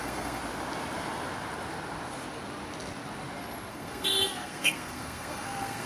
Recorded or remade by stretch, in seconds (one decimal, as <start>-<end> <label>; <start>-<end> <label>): 0.0-0.4 remade; 0.4-3.7 recorded; 3.7-5.9 remade

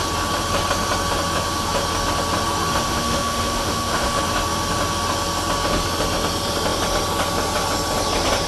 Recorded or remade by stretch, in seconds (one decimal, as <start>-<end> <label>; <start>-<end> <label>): 0.0-2.7 recorded; 2.7-4.2 remade; 4.2-8.5 recorded

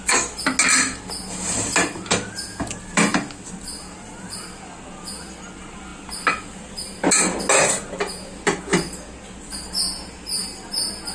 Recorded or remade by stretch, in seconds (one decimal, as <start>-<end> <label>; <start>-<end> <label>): 0.0-11.1 recorded

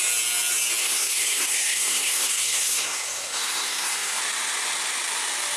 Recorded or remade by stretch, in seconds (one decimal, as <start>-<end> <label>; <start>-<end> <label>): 0.0-0.8 recorded; 0.8-4.2 remade; 4.2-5.6 recorded

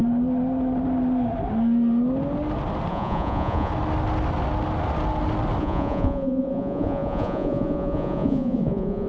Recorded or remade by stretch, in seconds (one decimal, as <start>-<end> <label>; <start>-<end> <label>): 0.0-2.9 recorded; 2.9-3.7 remade; 3.7-5.6 recorded; 5.6-9.1 remade